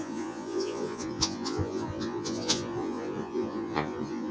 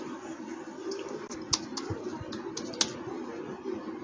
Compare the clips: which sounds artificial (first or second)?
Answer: first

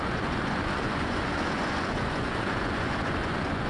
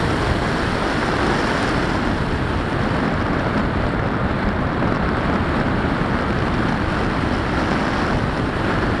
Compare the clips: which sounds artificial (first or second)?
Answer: first